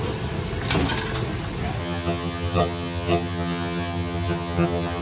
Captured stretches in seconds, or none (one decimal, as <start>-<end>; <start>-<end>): 0.0-1.8